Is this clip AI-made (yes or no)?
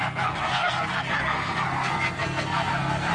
yes